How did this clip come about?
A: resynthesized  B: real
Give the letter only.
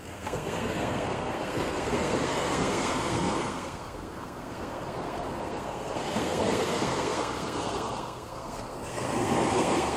A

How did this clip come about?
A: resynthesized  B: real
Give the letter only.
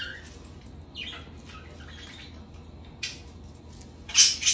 B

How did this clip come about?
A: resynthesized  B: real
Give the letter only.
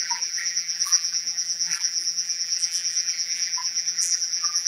A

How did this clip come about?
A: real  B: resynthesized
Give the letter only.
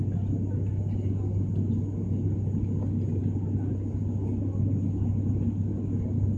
A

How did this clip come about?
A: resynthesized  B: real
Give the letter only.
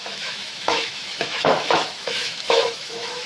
A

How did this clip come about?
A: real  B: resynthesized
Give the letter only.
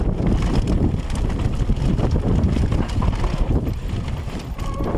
A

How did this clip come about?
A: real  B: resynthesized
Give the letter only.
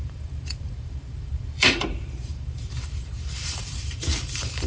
B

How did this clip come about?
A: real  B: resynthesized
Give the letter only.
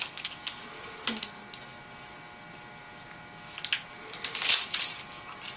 A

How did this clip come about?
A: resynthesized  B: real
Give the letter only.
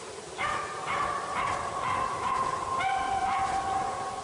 B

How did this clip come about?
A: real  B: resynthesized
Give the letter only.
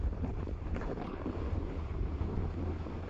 B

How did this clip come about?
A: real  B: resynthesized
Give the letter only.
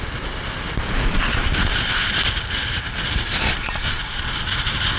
A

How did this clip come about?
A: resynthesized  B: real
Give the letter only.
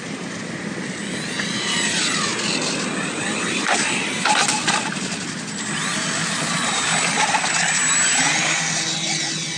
B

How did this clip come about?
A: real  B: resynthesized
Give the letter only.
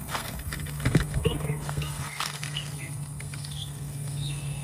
B